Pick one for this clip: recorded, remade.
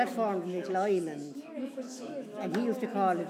remade